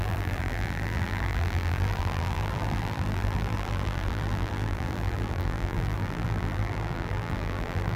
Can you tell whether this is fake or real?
fake